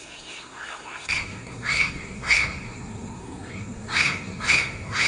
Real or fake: fake